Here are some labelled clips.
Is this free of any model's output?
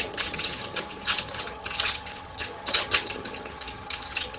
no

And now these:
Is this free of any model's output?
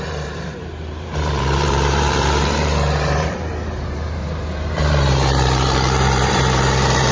no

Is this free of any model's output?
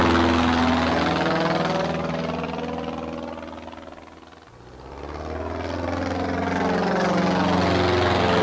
yes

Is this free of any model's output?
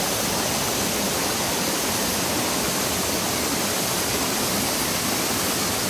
yes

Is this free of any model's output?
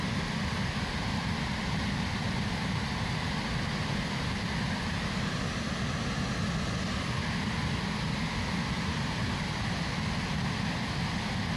yes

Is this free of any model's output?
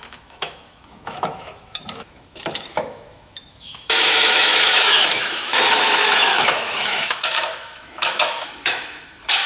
no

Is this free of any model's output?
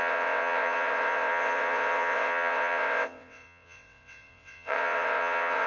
no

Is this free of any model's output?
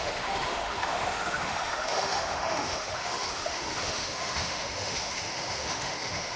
no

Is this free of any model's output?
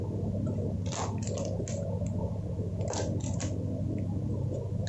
yes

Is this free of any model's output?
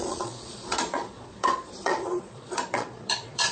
no